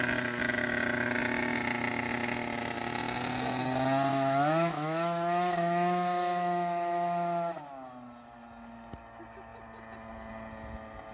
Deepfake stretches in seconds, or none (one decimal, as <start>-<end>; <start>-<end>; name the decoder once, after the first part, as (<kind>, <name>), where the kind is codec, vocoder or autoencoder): 4.1-7.6 (autoencoder, DAC-VAE)